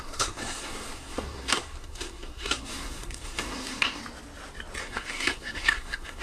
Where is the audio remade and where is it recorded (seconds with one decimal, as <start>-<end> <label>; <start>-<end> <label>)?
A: 0.0-4.0 remade; 4.0-4.8 recorded; 4.8-6.2 remade